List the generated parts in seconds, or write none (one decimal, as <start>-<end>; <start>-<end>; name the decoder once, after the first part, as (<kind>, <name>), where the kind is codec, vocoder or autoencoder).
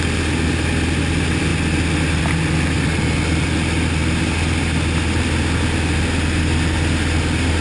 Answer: none